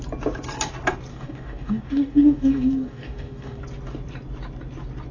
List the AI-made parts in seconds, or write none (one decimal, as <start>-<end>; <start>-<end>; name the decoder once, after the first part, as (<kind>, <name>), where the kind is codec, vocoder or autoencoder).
1.1-3.6 (codec, DAC)